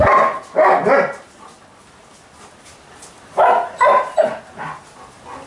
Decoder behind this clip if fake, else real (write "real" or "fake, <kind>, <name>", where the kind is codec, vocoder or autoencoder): real